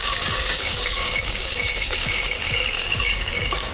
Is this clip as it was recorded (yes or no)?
no